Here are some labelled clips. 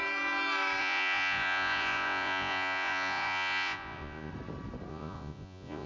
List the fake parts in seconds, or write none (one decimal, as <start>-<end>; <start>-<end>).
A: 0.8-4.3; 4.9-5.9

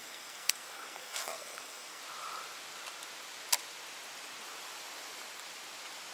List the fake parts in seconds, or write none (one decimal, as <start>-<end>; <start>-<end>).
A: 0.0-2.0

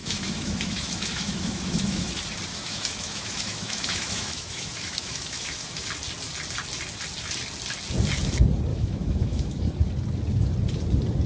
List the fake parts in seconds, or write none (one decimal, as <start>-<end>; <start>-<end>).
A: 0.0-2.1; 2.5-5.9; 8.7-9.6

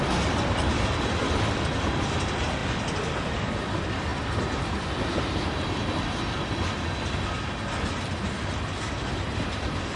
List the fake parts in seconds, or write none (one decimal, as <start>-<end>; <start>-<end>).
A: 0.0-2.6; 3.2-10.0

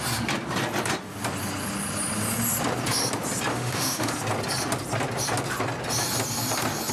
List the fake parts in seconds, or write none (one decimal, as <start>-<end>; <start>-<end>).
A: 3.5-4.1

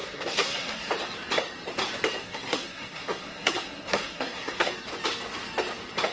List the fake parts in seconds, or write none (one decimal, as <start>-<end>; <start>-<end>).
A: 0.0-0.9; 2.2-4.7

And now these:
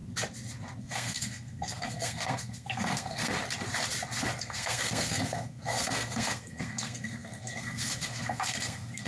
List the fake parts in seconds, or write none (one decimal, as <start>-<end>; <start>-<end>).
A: 0.8-3.3; 4.4-9.1

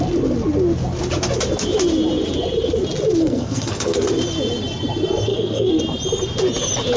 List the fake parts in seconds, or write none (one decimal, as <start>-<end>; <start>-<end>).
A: 3.2-4.1; 5.3-5.8